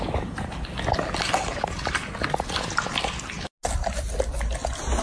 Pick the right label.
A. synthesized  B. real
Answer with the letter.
B